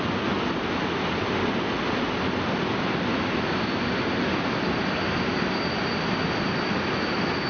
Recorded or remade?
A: recorded